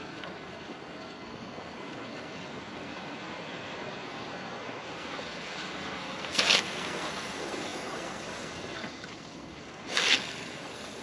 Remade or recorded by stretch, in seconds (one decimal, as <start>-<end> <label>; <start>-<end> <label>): 0.0-11.0 remade

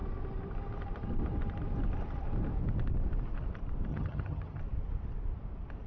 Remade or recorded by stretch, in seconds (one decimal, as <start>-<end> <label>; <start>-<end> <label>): 0.0-3.9 recorded; 3.9-4.6 remade; 4.6-5.9 recorded

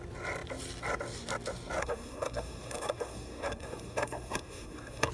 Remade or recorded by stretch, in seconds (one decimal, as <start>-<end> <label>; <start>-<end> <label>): 0.0-1.8 recorded; 1.8-5.1 remade

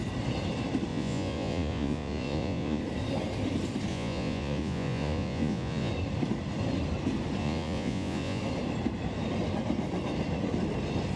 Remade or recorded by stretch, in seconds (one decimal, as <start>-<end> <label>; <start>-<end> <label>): 0.0-0.9 recorded; 0.9-2.8 remade; 2.8-3.9 recorded; 3.9-5.9 remade; 5.9-7.4 recorded; 7.4-8.4 remade; 8.4-11.2 recorded

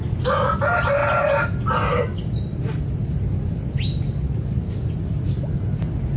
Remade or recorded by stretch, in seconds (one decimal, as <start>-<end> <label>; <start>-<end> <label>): 0.0-6.2 recorded

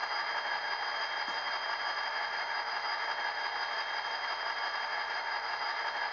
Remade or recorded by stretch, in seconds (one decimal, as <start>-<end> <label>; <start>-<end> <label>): 0.0-6.1 recorded